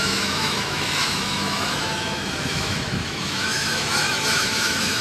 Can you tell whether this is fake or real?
fake